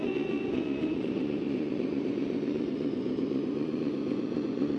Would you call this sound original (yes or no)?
no